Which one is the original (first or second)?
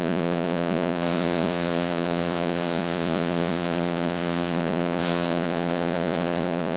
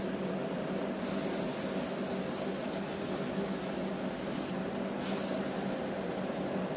second